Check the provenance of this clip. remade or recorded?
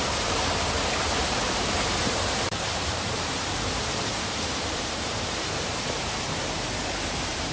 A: remade